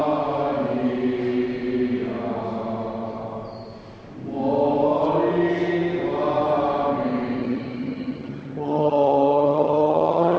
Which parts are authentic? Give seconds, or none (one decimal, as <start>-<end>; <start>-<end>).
0.0-7.4